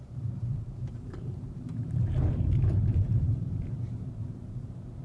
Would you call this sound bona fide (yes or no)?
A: no